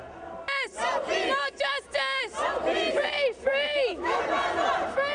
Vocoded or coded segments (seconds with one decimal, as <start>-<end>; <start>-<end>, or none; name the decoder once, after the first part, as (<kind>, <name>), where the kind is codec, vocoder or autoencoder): 1.4-2.2 (autoencoder, DAC-VAE); 3.5-4.2